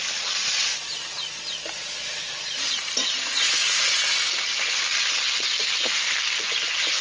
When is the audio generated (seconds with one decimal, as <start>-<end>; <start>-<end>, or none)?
none